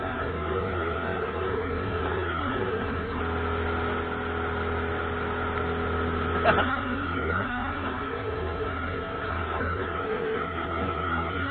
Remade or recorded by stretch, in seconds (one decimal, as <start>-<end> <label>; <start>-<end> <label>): 0.0-3.2 remade; 3.2-6.6 recorded; 6.6-11.5 remade